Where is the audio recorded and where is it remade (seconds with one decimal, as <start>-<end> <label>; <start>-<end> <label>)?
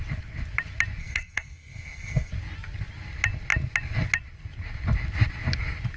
0.0-1.0 recorded; 1.0-2.3 remade; 2.3-6.0 recorded